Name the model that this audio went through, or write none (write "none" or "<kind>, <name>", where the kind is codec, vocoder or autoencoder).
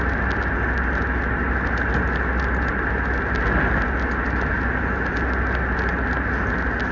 none